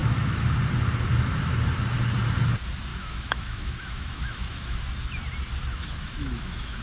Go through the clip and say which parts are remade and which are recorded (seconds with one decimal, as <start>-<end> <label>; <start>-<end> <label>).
0.0-0.5 remade; 0.5-2.9 recorded; 2.9-4.9 remade; 4.9-5.7 recorded; 5.7-6.8 remade